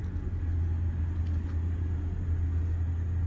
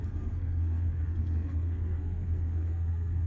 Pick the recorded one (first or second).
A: first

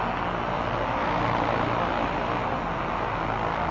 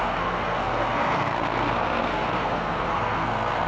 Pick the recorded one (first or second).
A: first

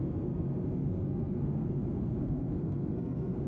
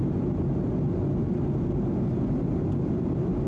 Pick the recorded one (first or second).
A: second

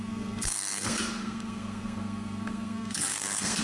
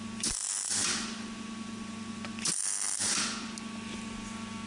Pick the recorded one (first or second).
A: second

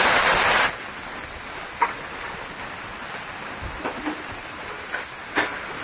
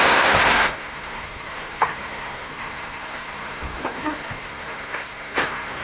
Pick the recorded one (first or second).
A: first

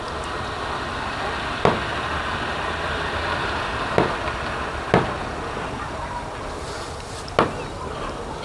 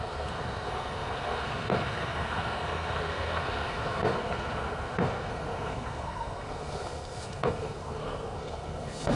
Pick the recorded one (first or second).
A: first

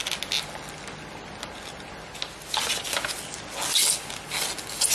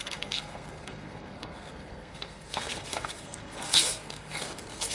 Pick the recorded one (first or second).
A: first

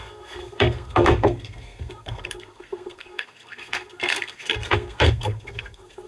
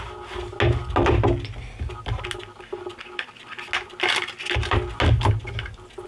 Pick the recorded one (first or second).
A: second